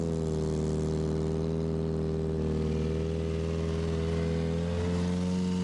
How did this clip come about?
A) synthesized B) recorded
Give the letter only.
B